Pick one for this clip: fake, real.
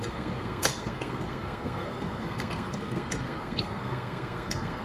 fake